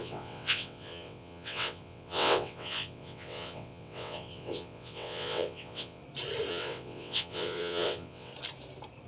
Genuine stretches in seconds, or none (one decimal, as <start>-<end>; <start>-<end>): 6.0-6.5; 8.3-9.1